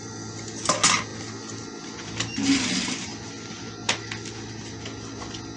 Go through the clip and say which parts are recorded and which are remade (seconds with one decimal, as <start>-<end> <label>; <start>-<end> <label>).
0.0-5.6 recorded